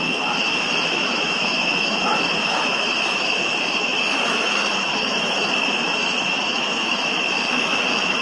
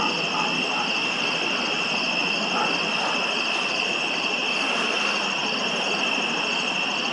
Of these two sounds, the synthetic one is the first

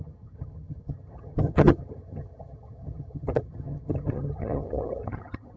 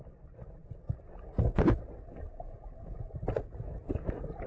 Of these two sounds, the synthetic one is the first